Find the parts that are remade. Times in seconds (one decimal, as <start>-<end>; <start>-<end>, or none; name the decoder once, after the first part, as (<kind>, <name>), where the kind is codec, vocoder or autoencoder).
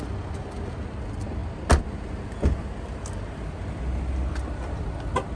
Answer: none